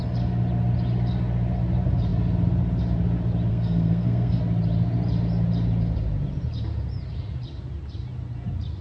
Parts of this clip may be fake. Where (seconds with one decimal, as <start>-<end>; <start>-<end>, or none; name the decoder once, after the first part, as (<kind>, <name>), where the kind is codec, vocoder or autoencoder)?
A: 3.5-4.4 (codec, SNAC)